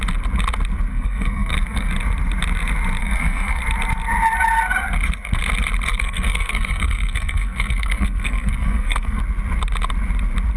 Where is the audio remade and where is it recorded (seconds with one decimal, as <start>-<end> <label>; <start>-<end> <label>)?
0.0-0.9 recorded; 0.9-1.9 remade; 1.9-3.0 recorded; 3.0-3.6 remade; 3.6-5.9 recorded; 5.9-9.2 remade; 9.2-10.6 recorded